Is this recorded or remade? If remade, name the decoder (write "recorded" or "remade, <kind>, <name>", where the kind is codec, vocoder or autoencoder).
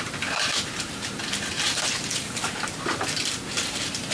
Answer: remade, vocoder, BigVGAN v2